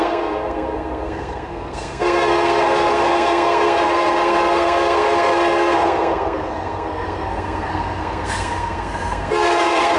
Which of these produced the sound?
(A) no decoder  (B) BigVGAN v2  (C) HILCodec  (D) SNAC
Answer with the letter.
D